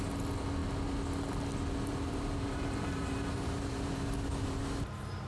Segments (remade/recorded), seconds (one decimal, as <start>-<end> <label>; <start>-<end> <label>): 0.0-1.9 recorded; 1.9-4.6 remade; 4.6-5.3 recorded